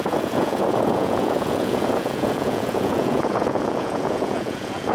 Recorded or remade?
remade